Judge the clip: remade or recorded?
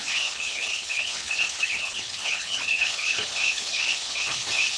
remade